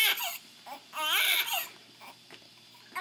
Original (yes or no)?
yes